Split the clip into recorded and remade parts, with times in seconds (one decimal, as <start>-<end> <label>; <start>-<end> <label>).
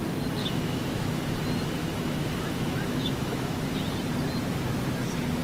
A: 0.0-0.4 recorded; 0.4-1.1 remade; 1.1-1.8 recorded; 1.8-3.7 remade; 3.7-5.4 recorded